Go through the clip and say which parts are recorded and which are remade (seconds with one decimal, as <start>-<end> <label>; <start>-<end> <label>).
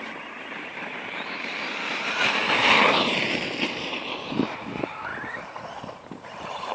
0.0-5.1 remade; 5.1-5.8 recorded; 5.8-6.7 remade